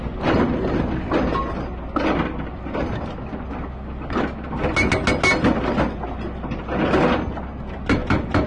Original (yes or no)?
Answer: yes